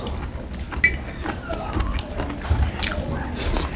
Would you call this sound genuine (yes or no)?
yes